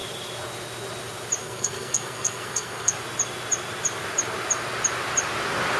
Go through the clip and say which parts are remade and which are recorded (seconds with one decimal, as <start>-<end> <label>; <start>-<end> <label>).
0.0-1.4 recorded; 1.4-2.9 remade; 2.9-5.8 recorded